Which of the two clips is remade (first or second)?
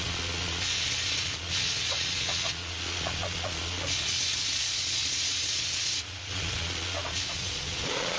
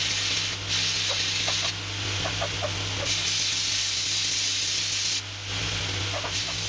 first